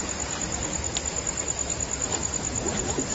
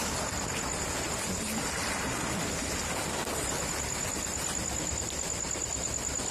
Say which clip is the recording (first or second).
first